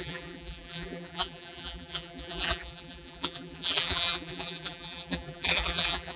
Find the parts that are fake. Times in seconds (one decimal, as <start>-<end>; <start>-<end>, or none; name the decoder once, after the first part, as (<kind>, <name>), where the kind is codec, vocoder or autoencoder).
0.0-6.2 (vocoder, BigVGAN v2)